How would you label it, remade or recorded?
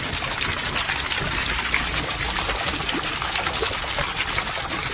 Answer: remade